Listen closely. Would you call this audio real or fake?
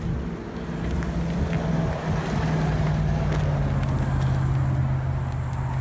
real